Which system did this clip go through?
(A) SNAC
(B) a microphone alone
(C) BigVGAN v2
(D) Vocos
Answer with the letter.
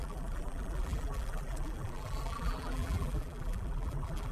C